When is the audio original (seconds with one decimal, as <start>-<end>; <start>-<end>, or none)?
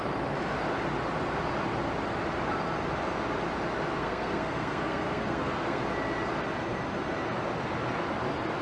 0.0-4.0; 5.8-8.6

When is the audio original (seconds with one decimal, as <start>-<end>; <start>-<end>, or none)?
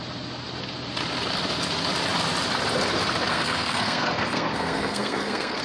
0.0-3.3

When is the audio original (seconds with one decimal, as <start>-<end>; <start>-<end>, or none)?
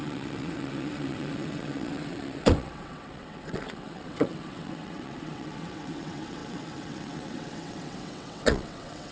none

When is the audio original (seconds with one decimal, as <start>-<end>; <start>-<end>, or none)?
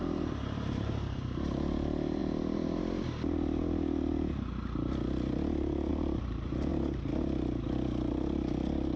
2.2-5.9; 6.7-9.0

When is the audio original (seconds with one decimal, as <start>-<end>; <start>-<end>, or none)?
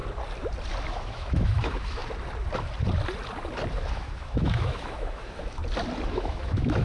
0.0-0.8; 2.0-3.9; 5.6-6.1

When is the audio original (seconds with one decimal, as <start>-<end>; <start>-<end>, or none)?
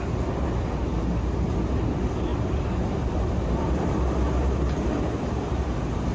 0.0-6.1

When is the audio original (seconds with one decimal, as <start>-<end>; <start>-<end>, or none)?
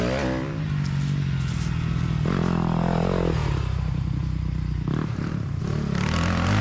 0.0-3.4; 5.6-6.6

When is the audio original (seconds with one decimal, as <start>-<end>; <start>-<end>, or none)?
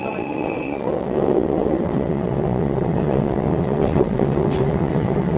none